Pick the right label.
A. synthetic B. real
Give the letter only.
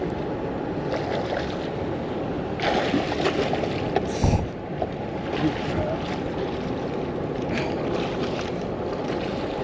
B